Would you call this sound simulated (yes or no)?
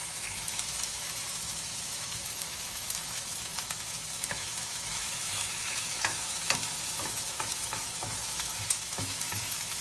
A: yes